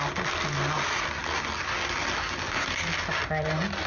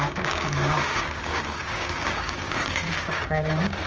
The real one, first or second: first